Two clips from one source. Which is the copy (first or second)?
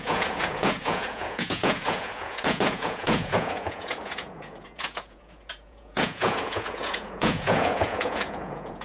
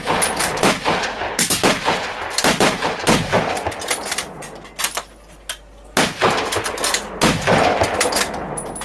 first